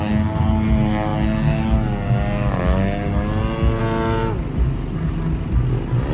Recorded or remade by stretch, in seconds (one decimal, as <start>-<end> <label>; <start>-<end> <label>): 0.0-6.1 recorded